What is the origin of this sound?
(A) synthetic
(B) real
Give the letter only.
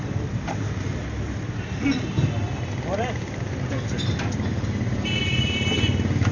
B